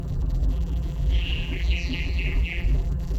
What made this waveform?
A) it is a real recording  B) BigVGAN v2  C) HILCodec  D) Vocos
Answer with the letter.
B